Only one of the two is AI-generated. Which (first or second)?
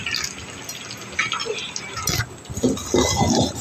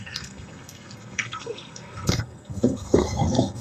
second